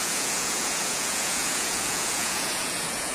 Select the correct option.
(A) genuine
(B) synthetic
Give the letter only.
B